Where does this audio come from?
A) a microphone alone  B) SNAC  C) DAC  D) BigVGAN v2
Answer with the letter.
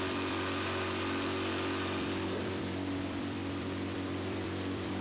D